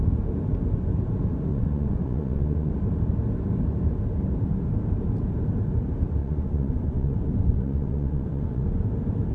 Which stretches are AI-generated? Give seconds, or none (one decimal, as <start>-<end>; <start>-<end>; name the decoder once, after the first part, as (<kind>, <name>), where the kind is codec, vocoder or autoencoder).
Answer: 1.5-2.7 (vocoder, Vocos); 6.2-8.9